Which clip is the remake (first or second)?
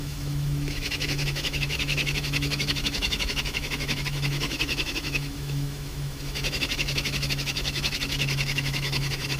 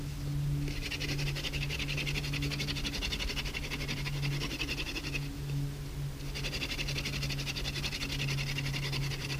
first